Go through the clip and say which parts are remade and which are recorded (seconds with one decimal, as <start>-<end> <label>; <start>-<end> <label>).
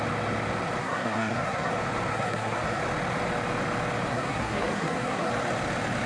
0.0-0.8 recorded; 0.8-1.7 remade; 1.7-2.1 recorded; 2.1-2.8 remade; 2.8-4.1 recorded; 4.1-5.3 remade; 5.3-6.1 recorded